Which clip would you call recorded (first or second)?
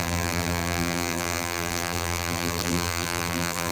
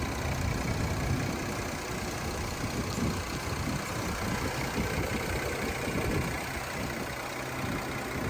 second